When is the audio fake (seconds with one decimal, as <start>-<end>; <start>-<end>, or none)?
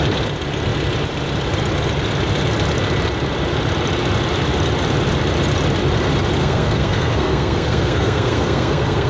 6.4-9.1